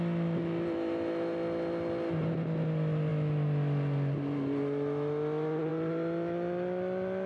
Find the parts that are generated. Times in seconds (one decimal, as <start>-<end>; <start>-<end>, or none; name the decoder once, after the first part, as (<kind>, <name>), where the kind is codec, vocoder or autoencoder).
none